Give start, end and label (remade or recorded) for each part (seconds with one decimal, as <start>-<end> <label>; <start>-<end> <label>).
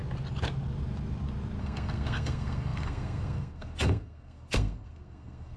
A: 0.0-1.6 recorded; 1.6-5.6 remade